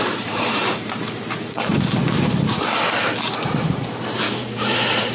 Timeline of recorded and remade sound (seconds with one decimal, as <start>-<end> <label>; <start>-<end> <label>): 0.0-1.7 remade; 1.7-3.7 recorded; 3.7-5.1 remade